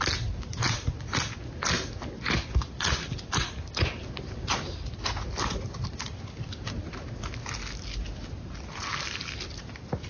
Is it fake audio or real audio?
real